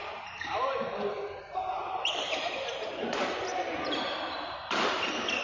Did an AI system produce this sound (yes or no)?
yes